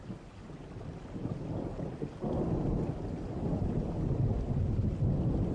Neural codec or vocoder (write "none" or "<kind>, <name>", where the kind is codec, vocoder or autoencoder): none